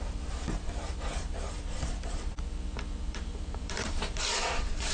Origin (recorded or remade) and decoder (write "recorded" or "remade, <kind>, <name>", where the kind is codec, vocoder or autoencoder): remade, vocoder, BigVGAN v2